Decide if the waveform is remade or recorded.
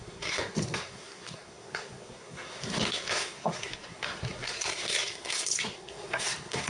remade